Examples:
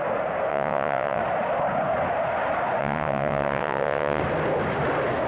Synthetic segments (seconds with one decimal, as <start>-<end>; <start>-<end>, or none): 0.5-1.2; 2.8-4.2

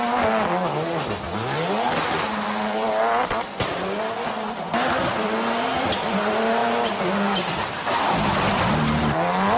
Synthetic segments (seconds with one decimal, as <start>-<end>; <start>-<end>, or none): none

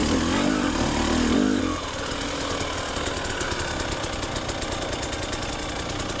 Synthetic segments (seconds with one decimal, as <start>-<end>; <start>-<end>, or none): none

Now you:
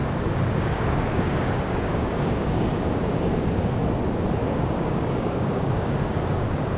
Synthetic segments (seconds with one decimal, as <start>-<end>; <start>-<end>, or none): 0.0-3.8; 4.4-6.8